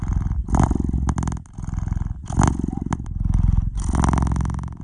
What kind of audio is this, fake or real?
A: real